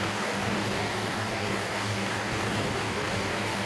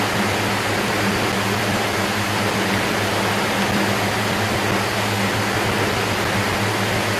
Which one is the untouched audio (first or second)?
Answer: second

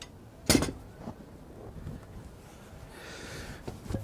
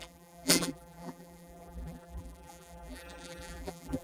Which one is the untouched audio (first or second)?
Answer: first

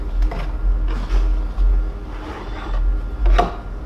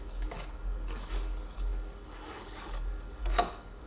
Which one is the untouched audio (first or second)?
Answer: first